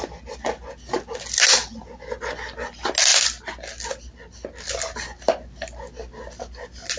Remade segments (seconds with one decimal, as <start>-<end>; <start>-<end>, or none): none